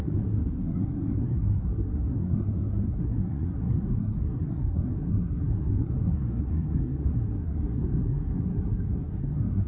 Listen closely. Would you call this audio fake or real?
fake